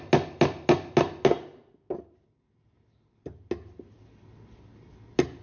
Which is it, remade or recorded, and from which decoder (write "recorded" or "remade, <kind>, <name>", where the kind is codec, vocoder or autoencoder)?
recorded